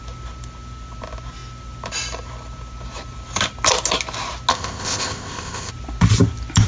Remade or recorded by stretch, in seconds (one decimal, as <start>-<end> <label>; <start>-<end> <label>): 0.0-4.5 recorded; 4.5-5.7 remade; 5.7-6.7 recorded